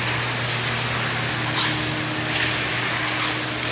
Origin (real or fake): real